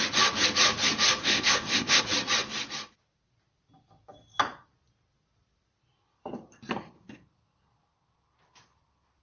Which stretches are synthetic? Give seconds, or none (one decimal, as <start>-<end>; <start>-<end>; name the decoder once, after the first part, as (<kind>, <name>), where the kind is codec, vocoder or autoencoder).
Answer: 1.2-2.0 (codec, ZipCodec)